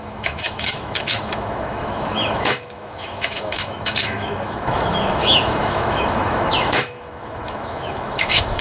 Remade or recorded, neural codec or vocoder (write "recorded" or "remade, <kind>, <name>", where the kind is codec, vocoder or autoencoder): remade, autoencoder, DAC-VAE